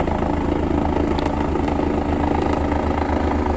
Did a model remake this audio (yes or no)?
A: no